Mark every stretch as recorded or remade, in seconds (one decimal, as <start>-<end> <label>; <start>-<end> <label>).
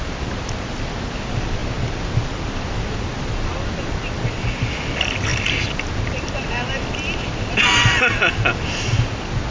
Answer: 0.0-9.5 recorded